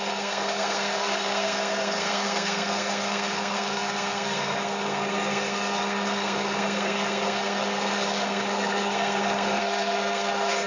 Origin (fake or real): fake